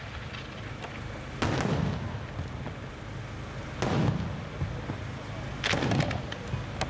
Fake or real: real